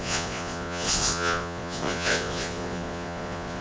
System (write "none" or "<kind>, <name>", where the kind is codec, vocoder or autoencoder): vocoder, Vocos